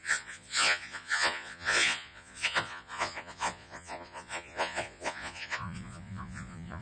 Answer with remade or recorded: remade